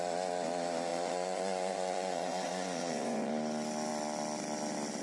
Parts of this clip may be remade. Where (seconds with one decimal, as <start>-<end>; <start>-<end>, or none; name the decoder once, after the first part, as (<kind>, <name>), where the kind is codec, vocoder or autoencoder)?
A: 0.9-3.3 (vocoder, Vocos)